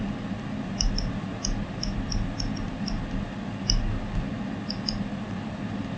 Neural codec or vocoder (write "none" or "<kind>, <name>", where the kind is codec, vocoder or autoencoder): none